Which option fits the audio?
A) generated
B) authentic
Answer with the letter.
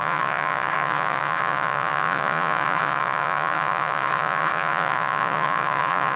A